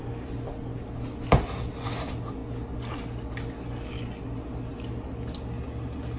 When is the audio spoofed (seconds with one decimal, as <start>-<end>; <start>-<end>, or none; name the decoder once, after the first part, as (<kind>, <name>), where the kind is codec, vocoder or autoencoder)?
none